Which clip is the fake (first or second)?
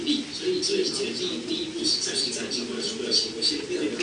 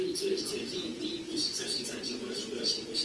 second